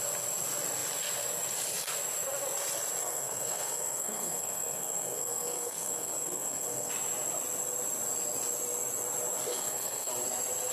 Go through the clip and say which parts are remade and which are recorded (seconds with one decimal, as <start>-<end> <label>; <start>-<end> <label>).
0.0-3.0 recorded; 3.0-6.9 remade; 6.9-9.5 recorded; 9.5-10.1 remade; 10.1-10.7 recorded